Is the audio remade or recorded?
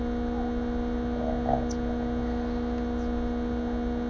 recorded